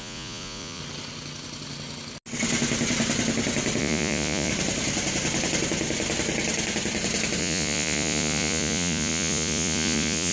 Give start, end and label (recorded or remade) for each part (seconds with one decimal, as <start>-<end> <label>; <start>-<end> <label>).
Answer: 0.0-0.8 remade; 0.8-3.8 recorded; 3.8-4.5 remade; 4.5-7.4 recorded; 7.4-10.3 remade